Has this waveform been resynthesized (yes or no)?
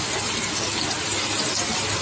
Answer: no